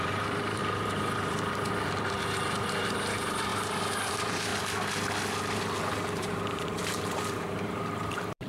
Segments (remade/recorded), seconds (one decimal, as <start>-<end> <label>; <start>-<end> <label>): 0.0-3.5 remade; 3.5-4.1 recorded; 4.1-4.5 remade; 4.5-5.9 recorded; 5.9-8.5 remade